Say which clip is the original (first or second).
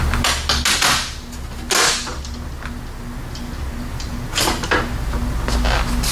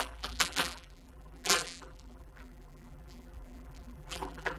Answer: first